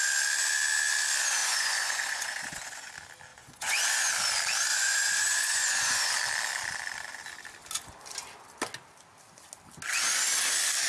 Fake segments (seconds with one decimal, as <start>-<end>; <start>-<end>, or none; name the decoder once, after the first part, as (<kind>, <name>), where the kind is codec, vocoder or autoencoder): 1.4-2.9 (vocoder, Vocos); 3.3-4.1; 4.7-6.1